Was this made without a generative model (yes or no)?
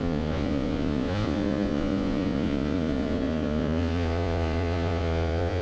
no